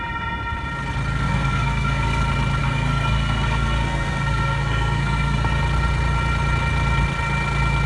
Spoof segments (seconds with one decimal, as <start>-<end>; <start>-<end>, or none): 1.1-2.2; 2.6-5.6